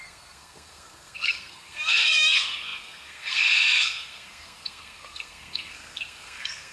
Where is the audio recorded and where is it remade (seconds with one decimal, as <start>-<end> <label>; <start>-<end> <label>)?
0.0-6.7 remade